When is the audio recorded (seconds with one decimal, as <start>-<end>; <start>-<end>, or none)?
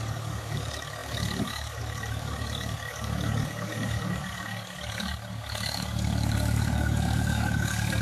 none